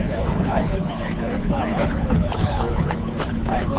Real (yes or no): no